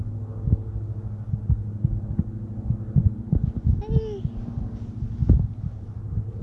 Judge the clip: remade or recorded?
recorded